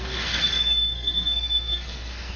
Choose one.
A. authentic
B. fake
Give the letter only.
B